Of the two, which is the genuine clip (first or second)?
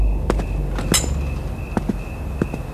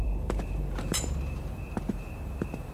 first